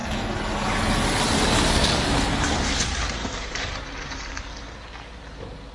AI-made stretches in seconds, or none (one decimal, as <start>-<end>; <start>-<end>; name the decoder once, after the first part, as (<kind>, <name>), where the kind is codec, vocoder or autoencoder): 1.8-4.3 (vocoder, BigVGAN v2)

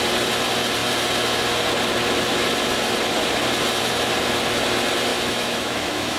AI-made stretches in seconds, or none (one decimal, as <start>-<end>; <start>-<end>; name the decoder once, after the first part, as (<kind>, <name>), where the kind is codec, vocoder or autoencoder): 5.1-6.2 (autoencoder, DAC-VAE)